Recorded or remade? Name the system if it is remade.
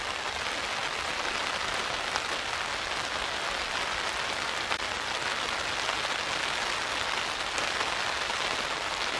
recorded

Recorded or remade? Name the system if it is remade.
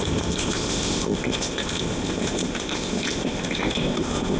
remade, codec, ZipCodec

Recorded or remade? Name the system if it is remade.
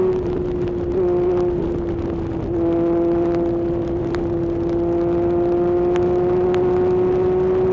recorded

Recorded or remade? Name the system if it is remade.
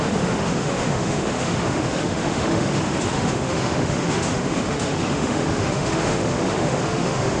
remade, autoencoder, DAC-VAE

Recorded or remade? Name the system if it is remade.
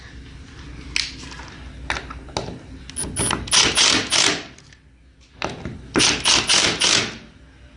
recorded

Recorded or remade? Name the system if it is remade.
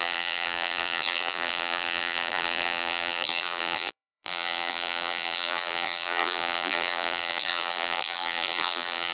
remade, vocoder, BigVGAN v2